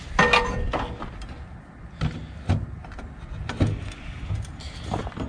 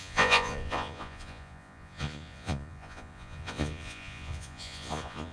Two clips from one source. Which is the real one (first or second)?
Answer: first